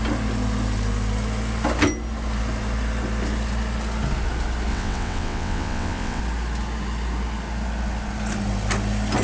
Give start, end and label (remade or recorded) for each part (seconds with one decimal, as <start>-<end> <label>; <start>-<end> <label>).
0.0-4.7 recorded; 4.7-6.2 remade; 6.2-9.2 recorded